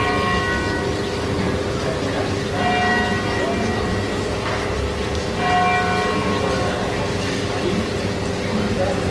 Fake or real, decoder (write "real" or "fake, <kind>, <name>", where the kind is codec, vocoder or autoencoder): real